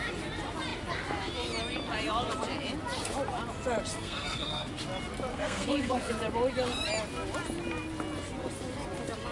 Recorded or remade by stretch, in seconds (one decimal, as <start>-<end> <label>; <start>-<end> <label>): 0.0-3.9 recorded; 3.9-4.7 remade; 4.7-5.3 recorded; 5.3-6.1 remade; 6.1-9.3 recorded